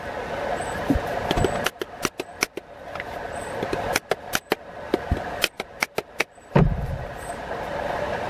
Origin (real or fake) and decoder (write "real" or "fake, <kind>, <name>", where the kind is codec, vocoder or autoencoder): real